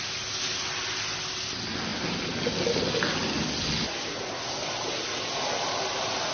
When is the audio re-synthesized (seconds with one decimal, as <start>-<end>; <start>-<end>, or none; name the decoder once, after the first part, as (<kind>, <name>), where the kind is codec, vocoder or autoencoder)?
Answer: none